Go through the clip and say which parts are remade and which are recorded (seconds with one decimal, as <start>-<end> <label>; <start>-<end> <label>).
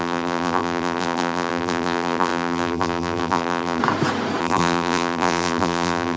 0.0-3.8 remade; 3.8-4.4 recorded; 4.4-6.2 remade